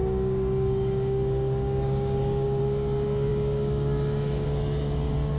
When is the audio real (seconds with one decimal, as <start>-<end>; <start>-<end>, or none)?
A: none